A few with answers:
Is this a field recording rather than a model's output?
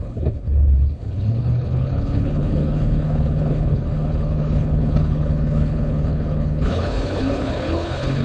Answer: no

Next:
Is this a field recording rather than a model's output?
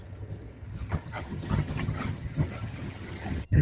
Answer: no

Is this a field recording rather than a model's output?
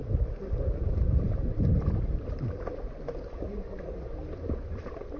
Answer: no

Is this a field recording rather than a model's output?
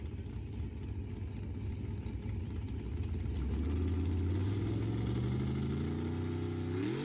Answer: yes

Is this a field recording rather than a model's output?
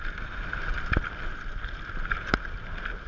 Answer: yes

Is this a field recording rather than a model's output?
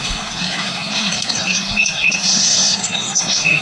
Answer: no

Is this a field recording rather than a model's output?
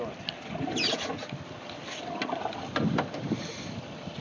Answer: yes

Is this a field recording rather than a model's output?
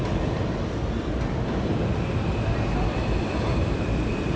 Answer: no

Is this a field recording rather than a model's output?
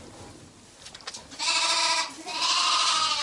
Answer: yes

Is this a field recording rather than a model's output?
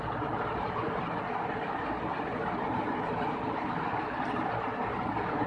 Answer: yes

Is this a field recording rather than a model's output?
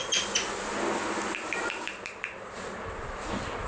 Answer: yes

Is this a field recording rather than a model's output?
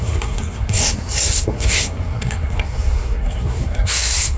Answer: no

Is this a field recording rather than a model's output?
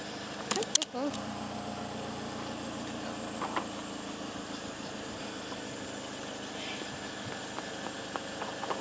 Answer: yes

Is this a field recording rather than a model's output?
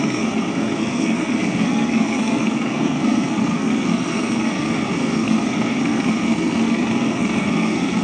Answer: no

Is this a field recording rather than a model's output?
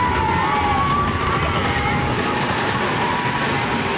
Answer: yes